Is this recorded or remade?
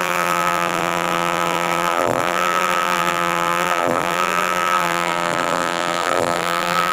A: remade